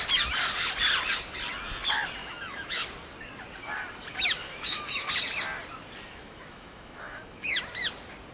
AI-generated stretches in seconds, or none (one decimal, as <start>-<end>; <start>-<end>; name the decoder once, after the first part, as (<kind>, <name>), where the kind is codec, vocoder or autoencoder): 2.2-2.9 (autoencoder, DAC-VAE); 4.1-5.1; 6.1-7.6